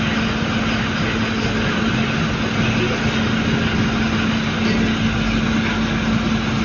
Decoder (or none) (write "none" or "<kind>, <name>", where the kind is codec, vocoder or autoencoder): none